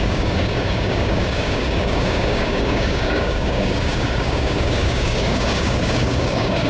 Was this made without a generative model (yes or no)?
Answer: no